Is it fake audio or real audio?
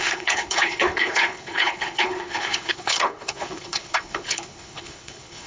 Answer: fake